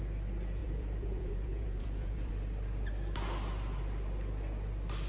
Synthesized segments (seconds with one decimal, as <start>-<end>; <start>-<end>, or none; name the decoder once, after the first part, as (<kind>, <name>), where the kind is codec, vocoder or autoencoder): 0.6-2.3 (vocoder, Vocos)

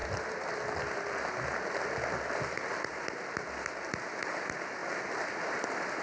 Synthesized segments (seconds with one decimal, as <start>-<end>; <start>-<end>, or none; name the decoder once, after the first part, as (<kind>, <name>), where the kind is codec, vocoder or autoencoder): none

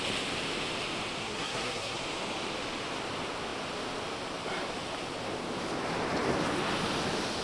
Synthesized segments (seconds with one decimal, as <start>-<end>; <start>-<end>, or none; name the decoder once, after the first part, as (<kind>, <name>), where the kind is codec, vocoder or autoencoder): 1.2-2.0 (codec, SNAC)

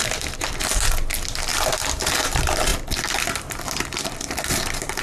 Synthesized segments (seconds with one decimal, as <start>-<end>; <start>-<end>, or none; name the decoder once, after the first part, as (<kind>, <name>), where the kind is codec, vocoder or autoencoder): none

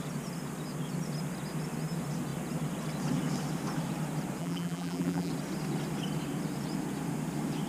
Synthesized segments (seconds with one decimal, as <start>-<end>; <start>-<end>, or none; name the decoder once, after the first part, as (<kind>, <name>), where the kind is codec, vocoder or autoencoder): 4.4-5.3 (vocoder, BigVGAN v2)